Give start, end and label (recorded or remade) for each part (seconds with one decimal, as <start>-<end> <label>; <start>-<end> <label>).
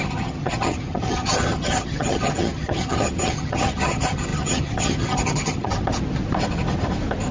0.0-5.7 remade; 5.7-7.3 recorded